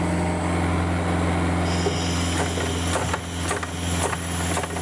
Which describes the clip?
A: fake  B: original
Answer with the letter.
B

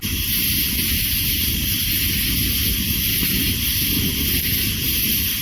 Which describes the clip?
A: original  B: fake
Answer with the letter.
A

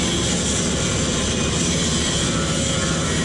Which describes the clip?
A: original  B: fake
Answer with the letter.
A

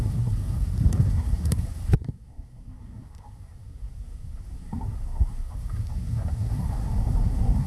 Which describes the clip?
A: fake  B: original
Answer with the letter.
A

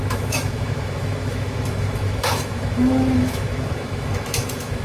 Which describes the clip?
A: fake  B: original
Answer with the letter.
A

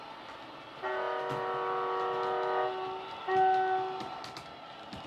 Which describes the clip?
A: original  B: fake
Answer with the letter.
A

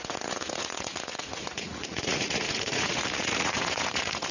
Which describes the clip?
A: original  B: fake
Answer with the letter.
B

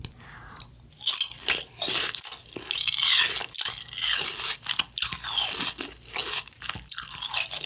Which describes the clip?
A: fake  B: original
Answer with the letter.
B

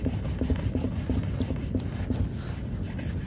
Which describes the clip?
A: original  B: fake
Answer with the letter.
A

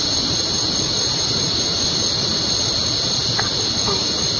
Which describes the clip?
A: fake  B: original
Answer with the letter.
B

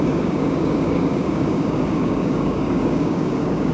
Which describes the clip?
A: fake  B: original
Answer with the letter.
A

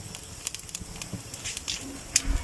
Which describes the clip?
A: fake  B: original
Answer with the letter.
B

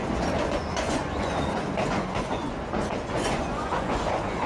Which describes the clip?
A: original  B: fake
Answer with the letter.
B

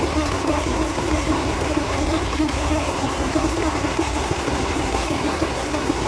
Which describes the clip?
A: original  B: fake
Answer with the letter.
B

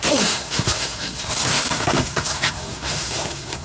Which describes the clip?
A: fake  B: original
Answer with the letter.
A